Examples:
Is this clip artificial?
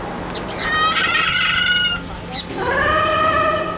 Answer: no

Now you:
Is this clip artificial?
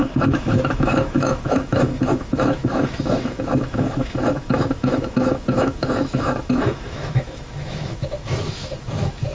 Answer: yes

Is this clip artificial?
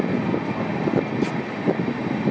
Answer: no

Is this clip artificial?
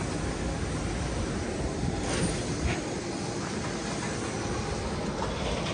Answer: no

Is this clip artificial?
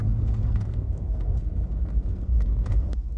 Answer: yes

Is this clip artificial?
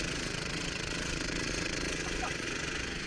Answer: yes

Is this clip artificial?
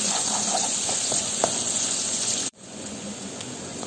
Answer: yes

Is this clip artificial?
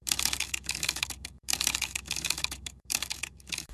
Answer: yes